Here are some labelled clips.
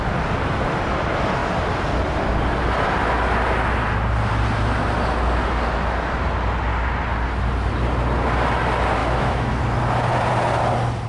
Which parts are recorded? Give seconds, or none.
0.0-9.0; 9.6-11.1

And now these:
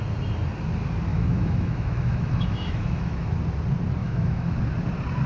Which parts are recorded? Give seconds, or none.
0.0-1.1; 3.4-4.0; 4.6-5.3

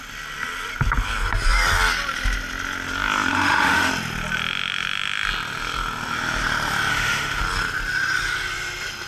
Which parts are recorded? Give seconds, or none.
0.0-3.3; 3.9-6.9; 7.4-9.1